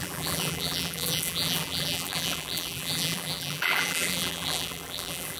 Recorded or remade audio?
remade